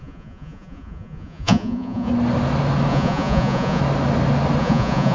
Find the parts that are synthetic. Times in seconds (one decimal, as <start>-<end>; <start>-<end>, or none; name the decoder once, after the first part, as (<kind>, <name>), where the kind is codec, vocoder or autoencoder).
0.0-2.1 (vocoder, Vocos); 2.9-3.8; 4.6-5.1